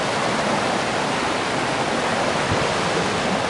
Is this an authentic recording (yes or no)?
yes